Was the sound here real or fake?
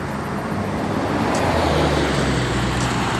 real